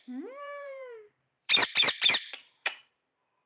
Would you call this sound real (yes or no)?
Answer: no